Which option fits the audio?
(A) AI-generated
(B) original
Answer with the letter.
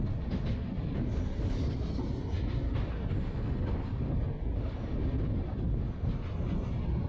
B